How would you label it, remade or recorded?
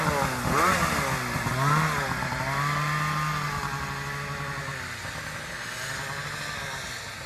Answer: recorded